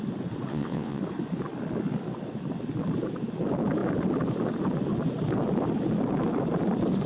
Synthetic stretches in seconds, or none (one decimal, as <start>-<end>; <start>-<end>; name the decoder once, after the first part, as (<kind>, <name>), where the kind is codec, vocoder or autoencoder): 0.5-1.0 (vocoder, WaveNeXt)